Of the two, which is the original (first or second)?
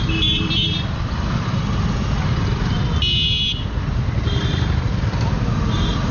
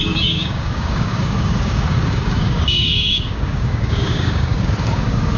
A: first